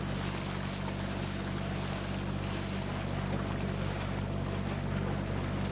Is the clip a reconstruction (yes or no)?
no